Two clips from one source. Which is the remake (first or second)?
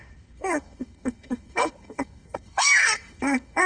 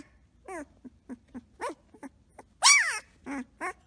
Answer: first